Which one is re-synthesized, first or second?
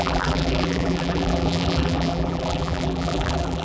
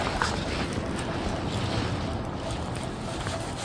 first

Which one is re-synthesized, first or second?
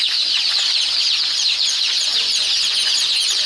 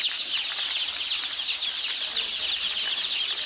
first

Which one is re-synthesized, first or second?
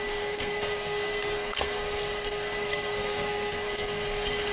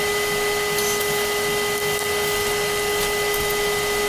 first